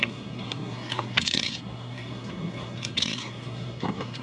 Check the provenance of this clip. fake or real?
fake